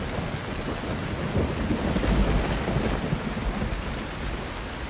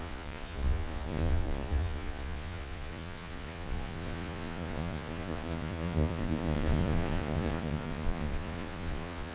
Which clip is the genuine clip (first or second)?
first